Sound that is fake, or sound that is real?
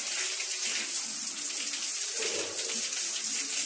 real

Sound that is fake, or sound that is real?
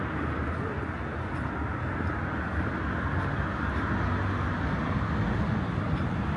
real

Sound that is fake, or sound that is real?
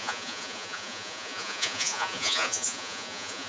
fake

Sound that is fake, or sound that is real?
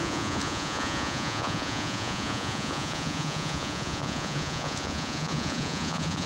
fake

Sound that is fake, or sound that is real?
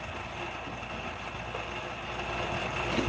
real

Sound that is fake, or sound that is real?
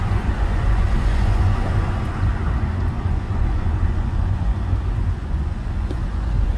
fake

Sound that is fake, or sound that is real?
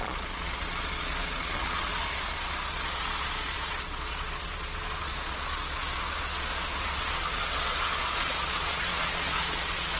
fake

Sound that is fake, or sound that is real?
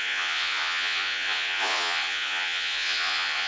fake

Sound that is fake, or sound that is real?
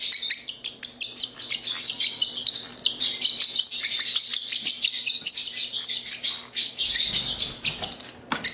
real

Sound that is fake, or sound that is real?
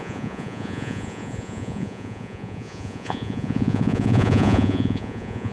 fake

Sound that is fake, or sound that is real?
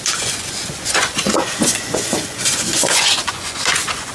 fake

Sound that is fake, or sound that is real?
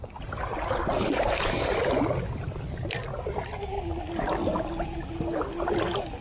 real